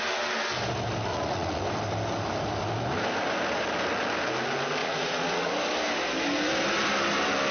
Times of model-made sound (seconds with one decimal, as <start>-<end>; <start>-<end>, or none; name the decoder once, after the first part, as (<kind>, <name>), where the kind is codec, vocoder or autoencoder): 1.1-1.6 (vocoder, Vocos); 4.8-5.5